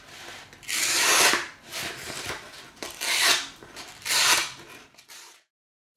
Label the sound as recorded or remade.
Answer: remade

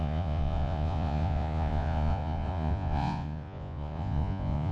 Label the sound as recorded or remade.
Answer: remade